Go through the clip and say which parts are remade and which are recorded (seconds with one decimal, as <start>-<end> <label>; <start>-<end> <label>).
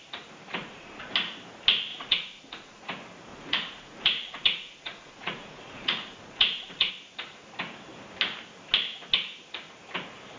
0.0-0.6 recorded; 0.6-1.1 remade; 1.1-1.9 recorded; 1.9-2.8 remade; 2.8-3.3 recorded; 3.3-6.9 remade; 6.9-10.4 recorded